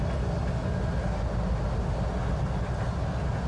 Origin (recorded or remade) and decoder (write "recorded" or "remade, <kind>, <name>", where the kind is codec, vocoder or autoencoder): recorded